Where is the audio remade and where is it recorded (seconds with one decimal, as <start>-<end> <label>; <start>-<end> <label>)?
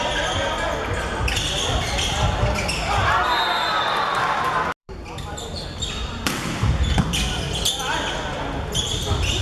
0.0-4.8 recorded; 4.8-7.3 remade; 7.3-9.4 recorded